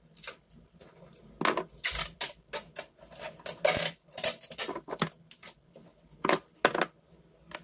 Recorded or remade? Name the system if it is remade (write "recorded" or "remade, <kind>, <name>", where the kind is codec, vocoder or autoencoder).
recorded